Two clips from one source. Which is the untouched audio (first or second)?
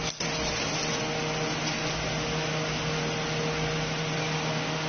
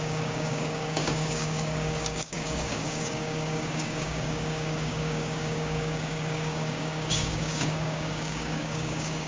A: first